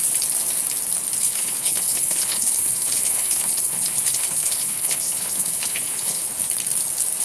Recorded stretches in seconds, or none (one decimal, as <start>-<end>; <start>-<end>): 0.0-1.2; 6.3-7.2